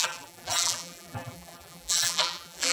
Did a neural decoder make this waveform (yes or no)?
yes